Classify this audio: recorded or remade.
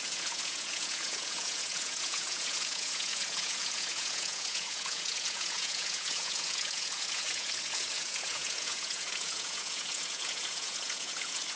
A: remade